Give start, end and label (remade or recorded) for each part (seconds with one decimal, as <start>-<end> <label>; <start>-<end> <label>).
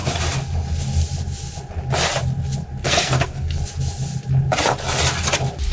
0.0-2.8 recorded; 2.8-3.6 remade; 3.6-5.7 recorded